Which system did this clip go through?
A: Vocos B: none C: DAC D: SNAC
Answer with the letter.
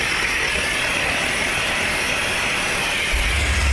B